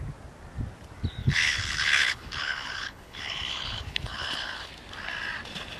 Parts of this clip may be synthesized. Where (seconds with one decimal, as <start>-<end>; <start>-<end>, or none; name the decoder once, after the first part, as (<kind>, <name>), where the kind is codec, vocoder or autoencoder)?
1.2-4.7 (codec, HILCodec)

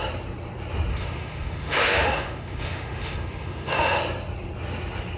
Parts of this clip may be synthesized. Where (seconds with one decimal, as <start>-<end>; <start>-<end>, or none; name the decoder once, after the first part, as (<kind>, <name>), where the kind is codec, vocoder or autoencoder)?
0.9-4.0 (autoencoder, DAC-VAE)

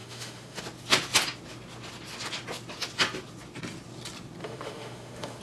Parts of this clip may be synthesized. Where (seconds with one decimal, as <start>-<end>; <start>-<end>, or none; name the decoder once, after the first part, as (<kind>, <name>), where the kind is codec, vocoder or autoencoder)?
0.0-0.6 (autoencoder, DAC-VAE); 4.4-5.4

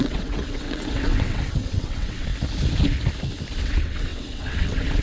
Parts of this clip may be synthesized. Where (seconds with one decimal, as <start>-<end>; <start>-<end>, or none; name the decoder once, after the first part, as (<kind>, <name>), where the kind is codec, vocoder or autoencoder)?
0.0-2.3 (vocoder, WaveNeXt); 3.6-5.0

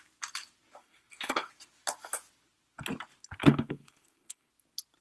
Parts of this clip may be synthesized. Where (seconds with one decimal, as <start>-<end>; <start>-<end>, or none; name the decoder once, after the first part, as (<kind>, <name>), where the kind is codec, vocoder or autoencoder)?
0.8-1.5 (codec, SNAC); 3.4-4.5